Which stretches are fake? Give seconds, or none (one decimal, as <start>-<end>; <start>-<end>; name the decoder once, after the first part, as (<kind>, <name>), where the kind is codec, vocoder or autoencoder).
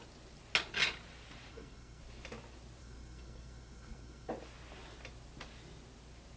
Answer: 1.5-2.0 (codec, SNAC); 2.8-4.3